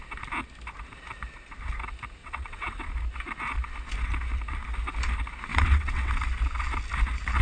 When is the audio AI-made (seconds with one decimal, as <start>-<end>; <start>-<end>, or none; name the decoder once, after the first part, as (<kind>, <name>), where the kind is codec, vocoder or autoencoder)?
2.2-2.9 (vocoder, WaveNeXt); 5.5-6.1